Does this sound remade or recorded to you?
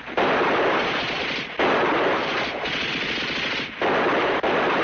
recorded